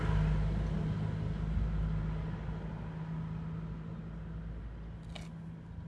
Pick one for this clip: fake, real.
real